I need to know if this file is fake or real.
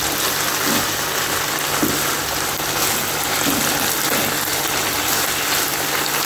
real